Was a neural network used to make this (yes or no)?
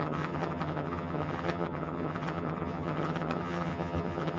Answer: yes